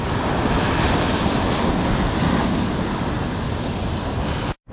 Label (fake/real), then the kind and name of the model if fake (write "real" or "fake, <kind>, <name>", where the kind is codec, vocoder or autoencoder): real